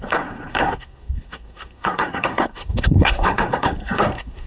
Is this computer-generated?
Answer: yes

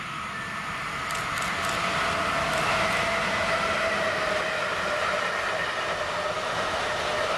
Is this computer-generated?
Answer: no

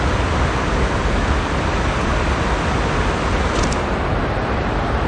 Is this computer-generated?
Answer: no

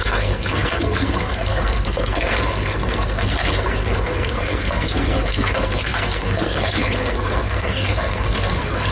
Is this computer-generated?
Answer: yes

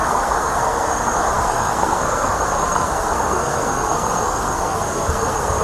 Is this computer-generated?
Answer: yes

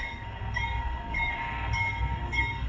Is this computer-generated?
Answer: yes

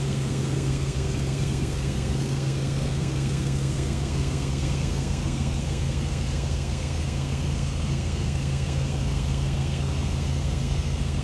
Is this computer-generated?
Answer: yes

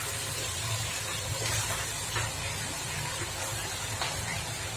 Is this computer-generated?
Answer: no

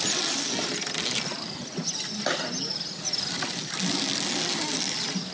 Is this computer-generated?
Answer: no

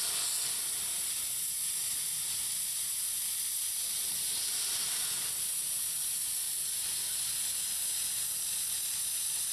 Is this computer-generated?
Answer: no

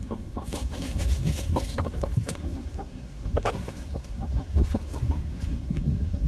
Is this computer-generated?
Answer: yes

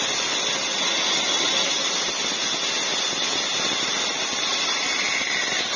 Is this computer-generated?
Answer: no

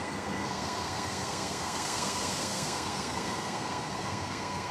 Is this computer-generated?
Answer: yes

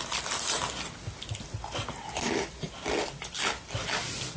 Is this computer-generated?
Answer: no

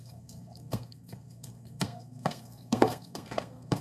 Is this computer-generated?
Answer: yes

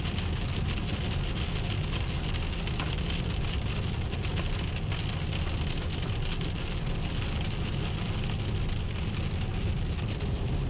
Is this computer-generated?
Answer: no